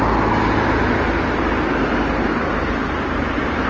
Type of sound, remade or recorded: recorded